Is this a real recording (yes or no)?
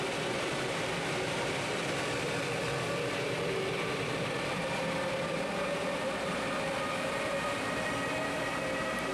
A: no